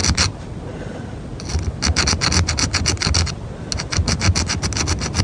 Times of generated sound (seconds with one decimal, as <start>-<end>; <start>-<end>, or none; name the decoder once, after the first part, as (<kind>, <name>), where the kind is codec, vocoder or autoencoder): none